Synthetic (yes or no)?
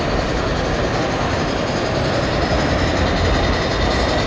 no